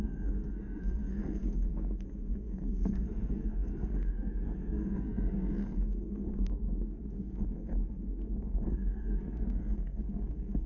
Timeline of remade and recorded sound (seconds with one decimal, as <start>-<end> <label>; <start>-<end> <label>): 0.0-10.7 remade